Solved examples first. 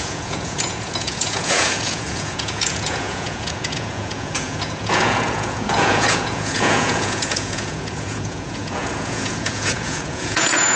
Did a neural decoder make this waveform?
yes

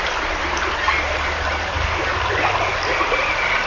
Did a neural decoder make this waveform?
no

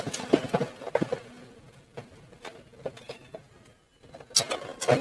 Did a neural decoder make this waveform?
no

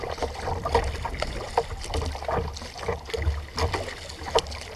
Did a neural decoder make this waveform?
no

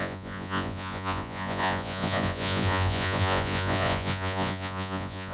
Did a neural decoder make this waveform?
yes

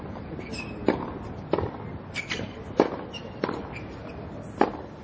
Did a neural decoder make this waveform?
no